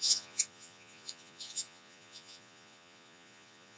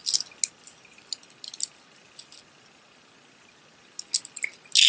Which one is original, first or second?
second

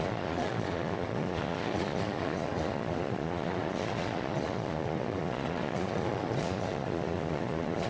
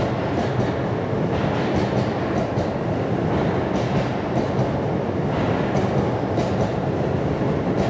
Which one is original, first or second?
second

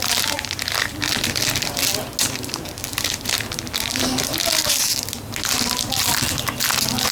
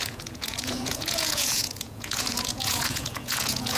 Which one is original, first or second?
first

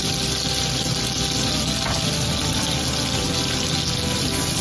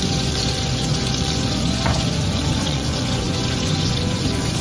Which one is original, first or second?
first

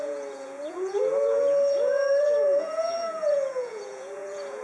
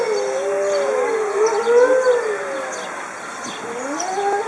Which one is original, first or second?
second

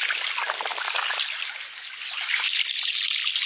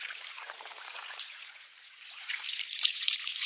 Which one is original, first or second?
first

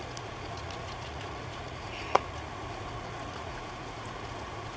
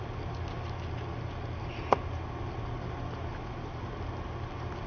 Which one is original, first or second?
second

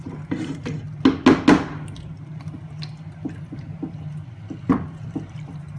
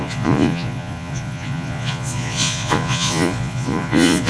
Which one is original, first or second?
first